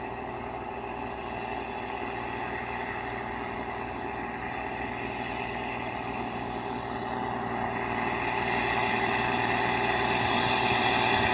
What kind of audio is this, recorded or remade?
recorded